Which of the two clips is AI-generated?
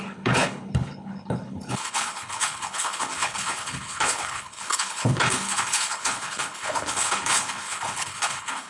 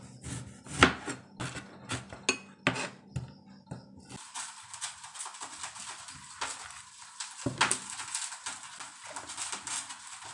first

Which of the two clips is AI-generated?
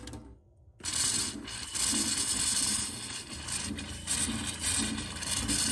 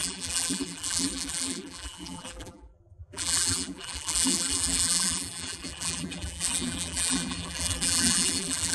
second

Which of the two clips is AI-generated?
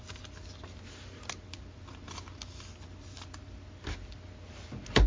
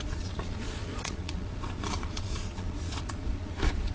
second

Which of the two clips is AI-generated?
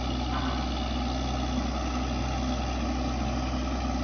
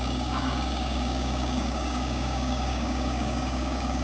second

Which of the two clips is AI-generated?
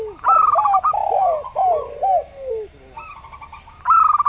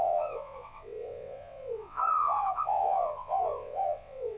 second